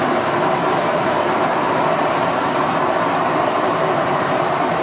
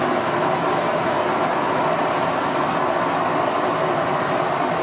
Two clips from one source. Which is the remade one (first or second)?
first